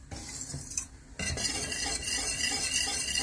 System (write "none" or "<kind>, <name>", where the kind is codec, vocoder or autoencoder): none